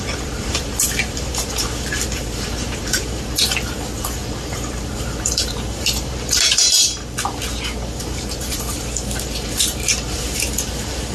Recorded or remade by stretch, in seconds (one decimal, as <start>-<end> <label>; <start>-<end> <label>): 0.0-6.6 remade; 6.6-8.0 recorded; 8.0-11.1 remade